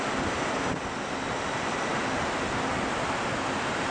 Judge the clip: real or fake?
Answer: real